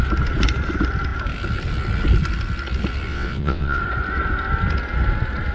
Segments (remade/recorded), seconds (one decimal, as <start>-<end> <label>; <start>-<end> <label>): 0.0-3.1 recorded; 3.1-3.8 remade; 3.8-5.5 recorded